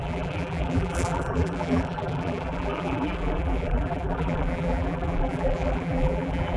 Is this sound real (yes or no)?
no